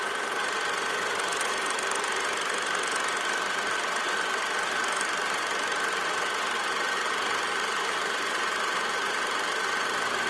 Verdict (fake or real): real